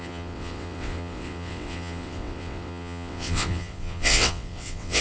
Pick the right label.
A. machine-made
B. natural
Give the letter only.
A